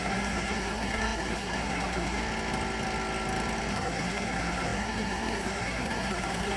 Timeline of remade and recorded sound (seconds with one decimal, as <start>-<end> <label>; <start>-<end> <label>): 0.0-2.2 remade; 2.2-3.7 recorded; 3.7-6.6 remade